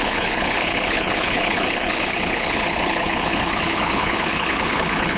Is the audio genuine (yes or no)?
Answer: no